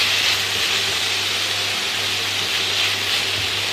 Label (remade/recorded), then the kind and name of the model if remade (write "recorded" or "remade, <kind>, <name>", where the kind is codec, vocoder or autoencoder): recorded